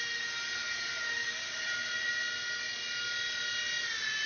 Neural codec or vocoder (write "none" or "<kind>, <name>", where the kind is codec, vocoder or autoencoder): none